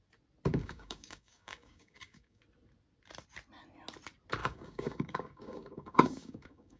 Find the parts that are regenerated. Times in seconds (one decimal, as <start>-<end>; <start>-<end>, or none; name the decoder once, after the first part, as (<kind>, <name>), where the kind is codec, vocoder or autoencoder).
0.5-2.4 (codec, DAC); 4.4-6.8